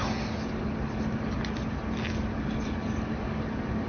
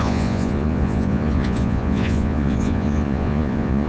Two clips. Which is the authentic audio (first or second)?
first